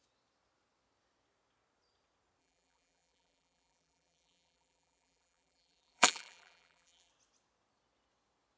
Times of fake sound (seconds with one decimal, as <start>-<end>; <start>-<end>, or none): 2.4-7.1